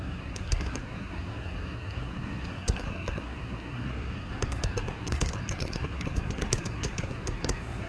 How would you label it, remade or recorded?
remade